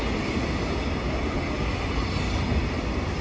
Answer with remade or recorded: recorded